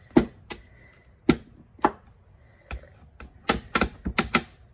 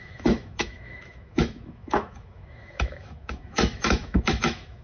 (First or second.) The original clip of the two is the first